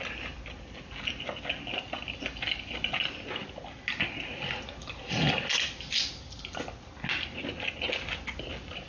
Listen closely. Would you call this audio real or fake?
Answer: real